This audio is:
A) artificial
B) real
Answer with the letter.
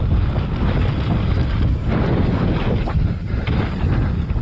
B